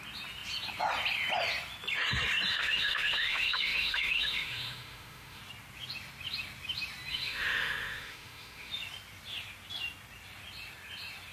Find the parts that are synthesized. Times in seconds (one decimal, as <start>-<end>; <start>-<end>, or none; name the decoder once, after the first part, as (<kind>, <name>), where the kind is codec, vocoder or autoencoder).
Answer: 2.5-5.4 (autoencoder, DAC-VAE); 7.1-8.7